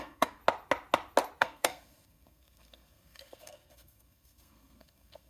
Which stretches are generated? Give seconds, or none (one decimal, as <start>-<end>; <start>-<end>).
0.0-0.4; 1.4-5.3